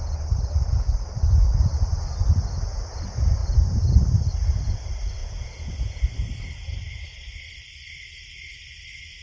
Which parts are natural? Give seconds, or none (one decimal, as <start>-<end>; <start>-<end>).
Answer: 0.0-5.2; 6.0-9.2